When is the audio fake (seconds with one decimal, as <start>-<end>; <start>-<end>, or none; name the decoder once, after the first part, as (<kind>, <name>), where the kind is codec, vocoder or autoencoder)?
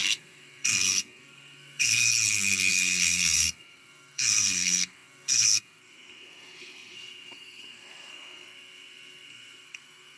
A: 0.0-2.1 (codec, SNAC); 2.7-10.2